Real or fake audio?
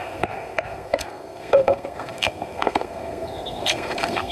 fake